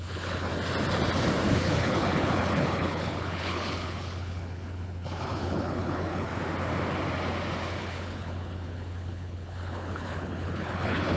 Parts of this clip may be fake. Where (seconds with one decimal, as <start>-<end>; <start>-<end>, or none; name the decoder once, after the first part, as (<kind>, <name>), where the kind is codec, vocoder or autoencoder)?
0.0-0.5 (codec, HILCodec); 1.5-6.3; 7.8-11.2